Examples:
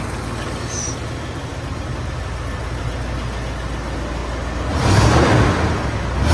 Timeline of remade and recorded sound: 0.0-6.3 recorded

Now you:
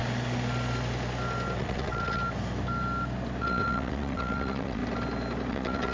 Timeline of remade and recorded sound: 0.0-1.6 recorded; 1.6-2.2 remade; 2.2-3.4 recorded; 3.4-4.8 remade; 4.8-5.5 recorded; 5.5-5.9 remade

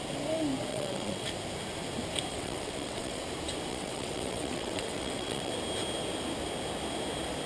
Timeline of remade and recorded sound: 0.0-0.7 recorded; 0.7-1.3 remade; 1.3-2.3 recorded; 2.3-3.2 remade; 3.2-3.7 recorded; 3.7-5.5 remade; 5.5-7.5 recorded

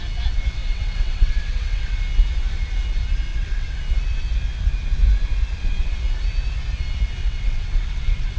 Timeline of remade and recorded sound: 0.0-0.6 recorded; 0.6-2.0 remade; 2.0-3.3 recorded; 3.3-3.8 remade; 3.8-7.2 recorded; 7.2-8.4 remade